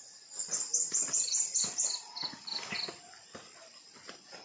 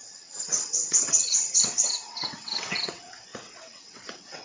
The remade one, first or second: second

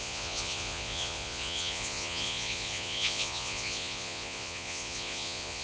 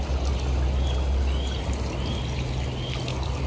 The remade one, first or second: first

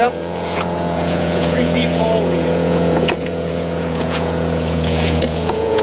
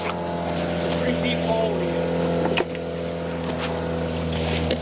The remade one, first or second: first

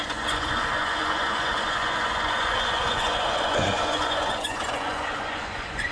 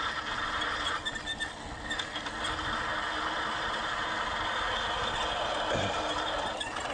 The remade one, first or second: first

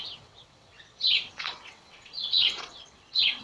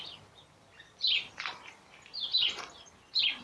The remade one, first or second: first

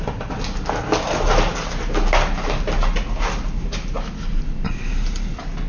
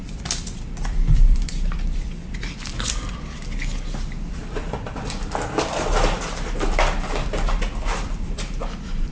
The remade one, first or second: second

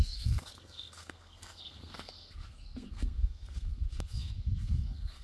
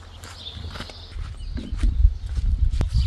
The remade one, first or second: first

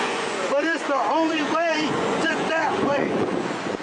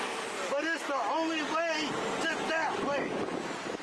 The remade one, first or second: first